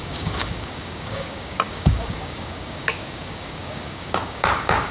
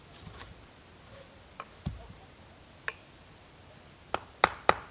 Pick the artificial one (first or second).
first